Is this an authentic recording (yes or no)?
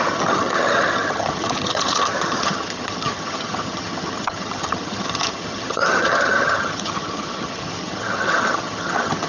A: no